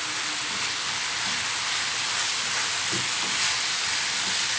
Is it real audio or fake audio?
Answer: real